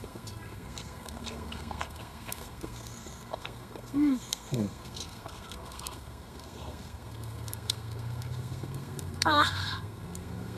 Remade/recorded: remade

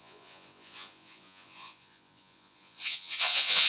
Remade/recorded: remade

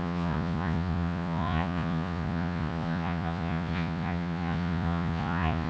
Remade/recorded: remade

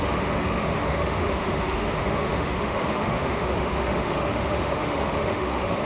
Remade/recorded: remade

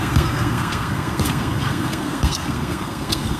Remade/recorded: remade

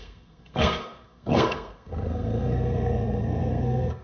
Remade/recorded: remade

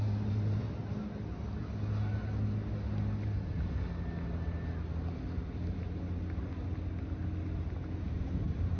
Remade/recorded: recorded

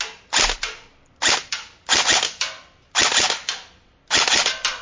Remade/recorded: recorded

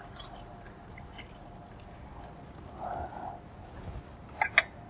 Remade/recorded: recorded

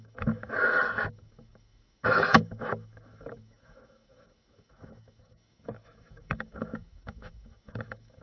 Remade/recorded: remade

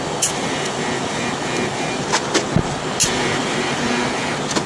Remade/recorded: recorded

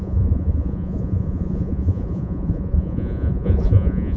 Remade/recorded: remade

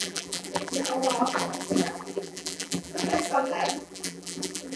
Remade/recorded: remade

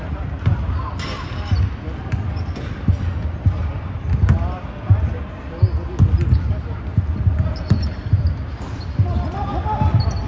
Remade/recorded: recorded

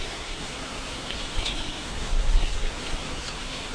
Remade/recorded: remade